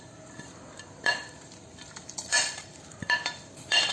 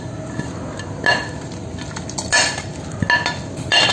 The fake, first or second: first